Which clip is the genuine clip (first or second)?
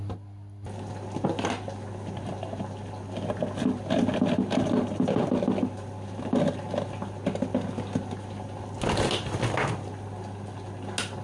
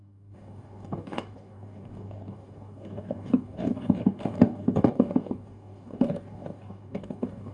first